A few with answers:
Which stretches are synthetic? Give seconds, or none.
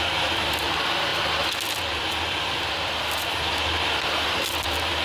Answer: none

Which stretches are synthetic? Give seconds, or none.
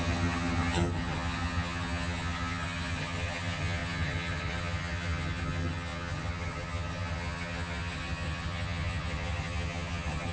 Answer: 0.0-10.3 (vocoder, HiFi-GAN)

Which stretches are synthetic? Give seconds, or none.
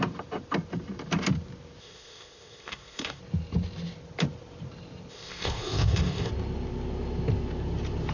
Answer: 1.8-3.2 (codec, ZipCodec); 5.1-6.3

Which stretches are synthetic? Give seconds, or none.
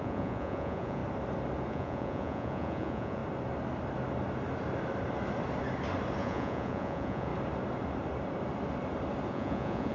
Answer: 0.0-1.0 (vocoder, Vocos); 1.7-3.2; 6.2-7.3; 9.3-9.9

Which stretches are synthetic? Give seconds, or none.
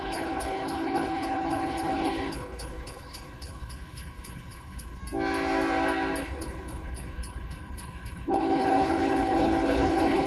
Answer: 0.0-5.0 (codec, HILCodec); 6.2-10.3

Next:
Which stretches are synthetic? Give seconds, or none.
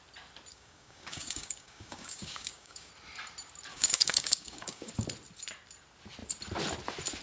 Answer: 0.5-2.9 (codec, DAC); 3.7-4.9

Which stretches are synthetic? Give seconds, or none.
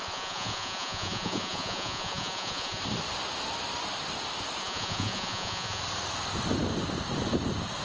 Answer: 0.0-2.8 (vocoder, Vocos); 4.6-5.8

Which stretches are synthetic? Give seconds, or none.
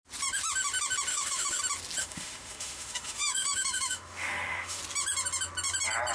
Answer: 1.1-1.6 (autoencoder, DAC-VAE); 2.0-4.8